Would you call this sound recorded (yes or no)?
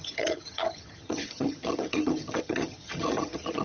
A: no